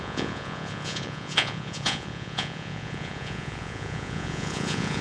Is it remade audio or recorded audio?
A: remade